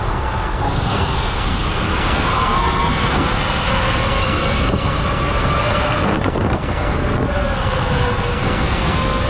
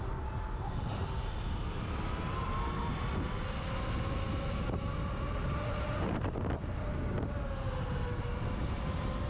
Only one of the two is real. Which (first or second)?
second